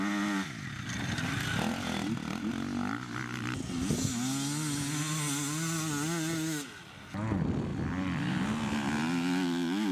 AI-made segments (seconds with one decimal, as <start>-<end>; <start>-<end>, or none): none